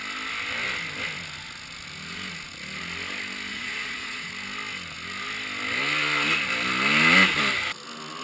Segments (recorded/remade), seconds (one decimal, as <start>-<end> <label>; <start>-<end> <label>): 0.0-3.5 recorded; 3.5-4.3 remade; 4.3-8.2 recorded